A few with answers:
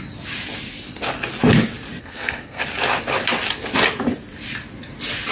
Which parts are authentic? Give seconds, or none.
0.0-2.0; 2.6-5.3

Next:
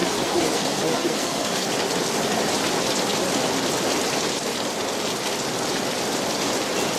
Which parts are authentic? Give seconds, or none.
1.7-7.0